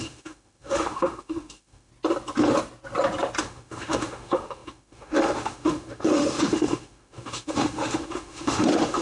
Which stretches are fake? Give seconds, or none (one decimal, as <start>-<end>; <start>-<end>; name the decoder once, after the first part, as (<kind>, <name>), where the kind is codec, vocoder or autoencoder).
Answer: 0.0-1.9 (autoencoder, DAC-VAE); 3.4-9.0